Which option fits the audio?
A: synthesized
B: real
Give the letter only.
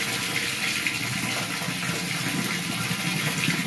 B